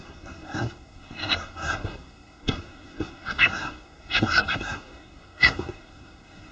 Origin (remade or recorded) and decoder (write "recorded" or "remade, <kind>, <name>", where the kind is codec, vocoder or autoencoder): remade, codec, SNAC